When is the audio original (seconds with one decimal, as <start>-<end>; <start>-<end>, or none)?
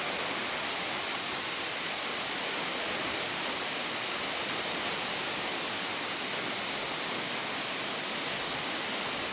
0.0-9.3